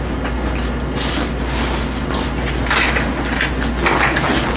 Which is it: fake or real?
real